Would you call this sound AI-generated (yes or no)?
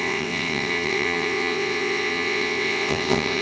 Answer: yes